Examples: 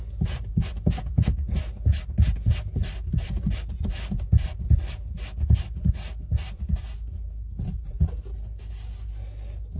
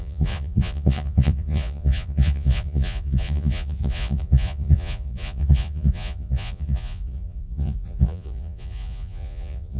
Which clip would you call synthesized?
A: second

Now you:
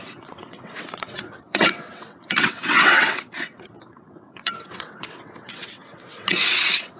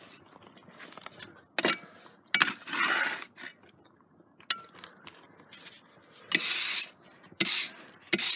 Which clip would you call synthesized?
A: first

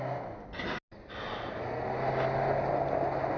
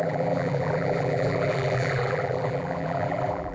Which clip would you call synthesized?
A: second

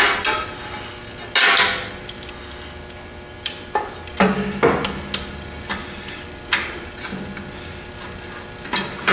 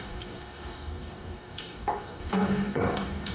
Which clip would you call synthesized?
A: second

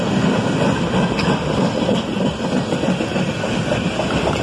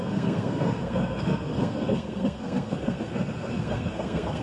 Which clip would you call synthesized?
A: second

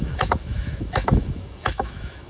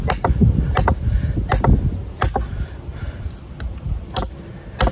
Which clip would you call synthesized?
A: first